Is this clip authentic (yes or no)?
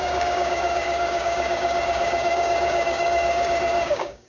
no